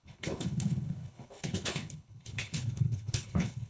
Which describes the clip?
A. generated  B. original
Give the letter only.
A